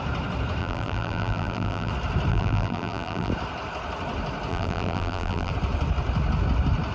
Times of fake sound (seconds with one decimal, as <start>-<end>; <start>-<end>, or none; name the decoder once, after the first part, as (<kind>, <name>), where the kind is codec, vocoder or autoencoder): 0.6-1.9 (vocoder, BigVGAN v2); 2.3-3.3; 4.5-5.5